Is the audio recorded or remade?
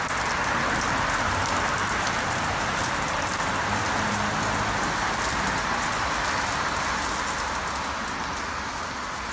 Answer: recorded